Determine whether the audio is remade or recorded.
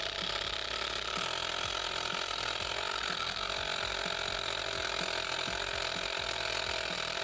recorded